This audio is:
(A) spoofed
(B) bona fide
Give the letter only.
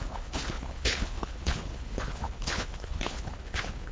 A